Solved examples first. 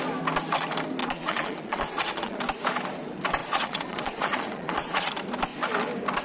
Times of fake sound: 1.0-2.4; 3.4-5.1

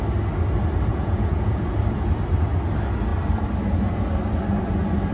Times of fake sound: 0.9-1.6

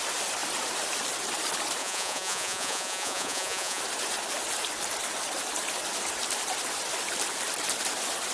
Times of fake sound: 1.8-3.8

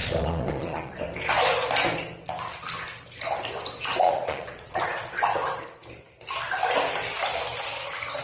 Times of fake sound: 0.0-1.0; 4.0-5.4

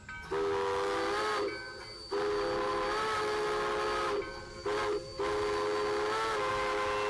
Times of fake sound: none

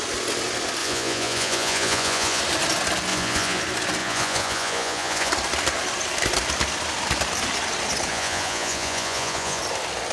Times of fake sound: 0.8-2.4; 3.1-3.6; 4.0-5.3; 8.1-9.6

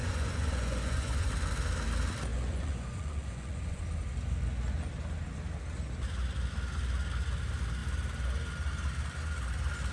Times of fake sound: 0.0-1.3; 2.3-3.8

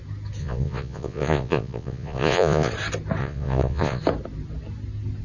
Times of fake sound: 0.4-2.7; 3.2-4.0